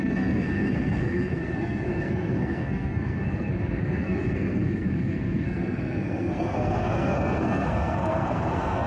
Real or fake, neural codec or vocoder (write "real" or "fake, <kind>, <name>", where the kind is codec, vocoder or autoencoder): fake, codec, SNAC